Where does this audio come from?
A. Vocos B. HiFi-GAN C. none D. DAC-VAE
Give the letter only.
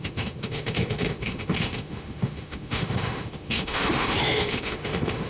D